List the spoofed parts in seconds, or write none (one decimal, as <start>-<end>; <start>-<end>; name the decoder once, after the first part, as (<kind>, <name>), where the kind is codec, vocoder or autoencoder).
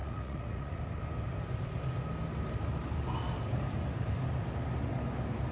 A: 0.0-0.8 (vocoder, Vocos)